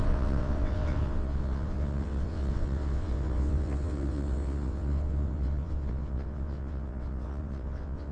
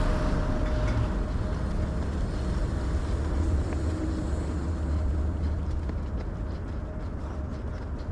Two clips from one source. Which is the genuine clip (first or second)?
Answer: second